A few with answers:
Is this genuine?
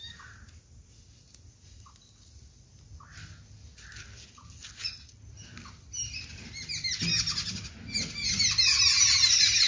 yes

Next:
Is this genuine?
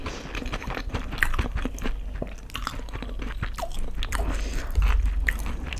yes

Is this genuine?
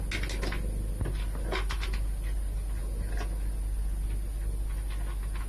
yes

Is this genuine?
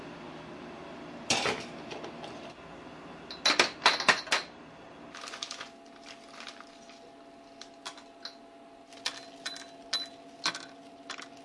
yes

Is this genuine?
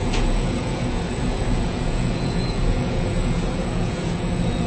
no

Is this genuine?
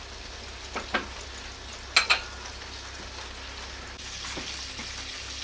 yes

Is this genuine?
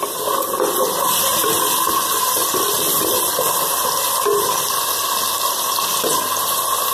yes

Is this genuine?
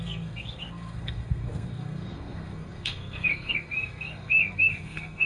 no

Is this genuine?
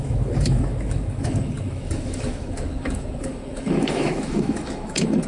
no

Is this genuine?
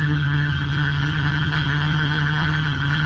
no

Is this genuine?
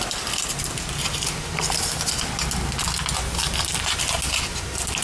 yes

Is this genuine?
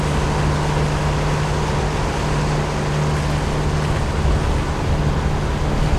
yes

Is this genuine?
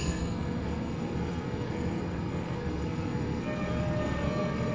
no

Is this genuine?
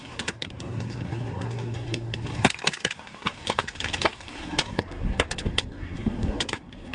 no